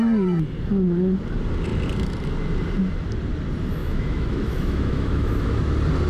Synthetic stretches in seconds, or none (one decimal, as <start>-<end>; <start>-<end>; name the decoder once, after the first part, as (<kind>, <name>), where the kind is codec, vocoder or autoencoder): 3.8-5.6 (autoencoder, DAC-VAE)